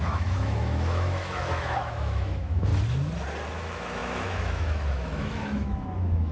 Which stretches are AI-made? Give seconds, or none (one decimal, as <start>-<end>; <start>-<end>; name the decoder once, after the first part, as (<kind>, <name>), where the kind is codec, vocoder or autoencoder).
0.0-2.7 (autoencoder, DAC-VAE); 3.5-6.3